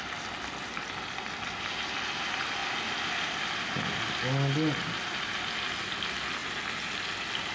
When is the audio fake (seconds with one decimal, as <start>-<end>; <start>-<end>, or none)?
none